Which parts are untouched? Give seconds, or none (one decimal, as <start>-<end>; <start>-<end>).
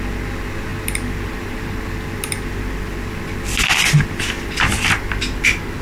0.0-5.8